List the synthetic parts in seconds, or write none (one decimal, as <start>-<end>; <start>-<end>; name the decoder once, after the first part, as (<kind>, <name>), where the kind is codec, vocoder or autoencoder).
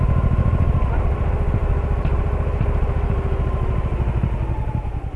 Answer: none